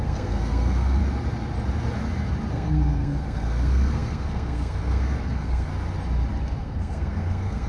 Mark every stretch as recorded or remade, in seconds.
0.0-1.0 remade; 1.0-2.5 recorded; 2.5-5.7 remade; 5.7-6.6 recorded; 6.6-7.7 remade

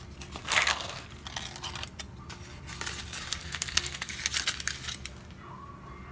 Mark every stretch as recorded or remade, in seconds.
0.0-0.4 recorded; 0.4-1.1 remade; 1.1-3.4 recorded; 3.4-4.1 remade; 4.1-6.1 recorded

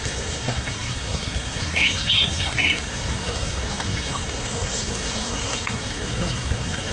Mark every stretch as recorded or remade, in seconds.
0.0-6.9 remade

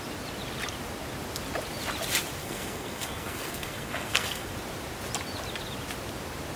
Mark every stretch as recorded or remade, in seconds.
0.0-2.4 recorded; 2.4-4.5 remade; 4.5-6.6 recorded